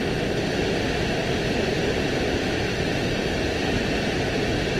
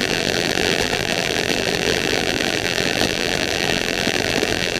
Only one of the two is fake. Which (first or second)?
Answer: second